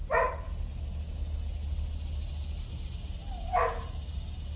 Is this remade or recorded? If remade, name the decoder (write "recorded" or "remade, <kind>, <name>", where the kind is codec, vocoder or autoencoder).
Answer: recorded